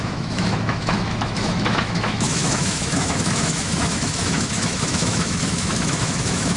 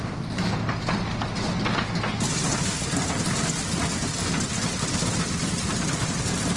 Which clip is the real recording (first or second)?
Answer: second